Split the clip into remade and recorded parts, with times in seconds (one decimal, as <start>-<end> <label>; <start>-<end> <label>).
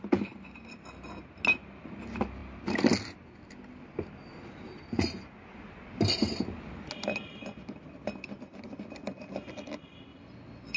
0.0-10.8 recorded